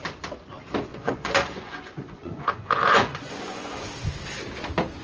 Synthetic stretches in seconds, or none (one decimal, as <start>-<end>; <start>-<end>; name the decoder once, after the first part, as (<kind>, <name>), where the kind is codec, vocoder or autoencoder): 0.9-3.9 (vocoder, Vocos)